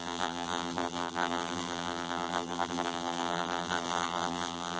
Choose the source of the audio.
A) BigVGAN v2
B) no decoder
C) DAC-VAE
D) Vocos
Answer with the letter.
A